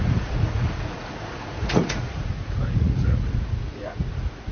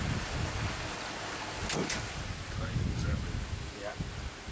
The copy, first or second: first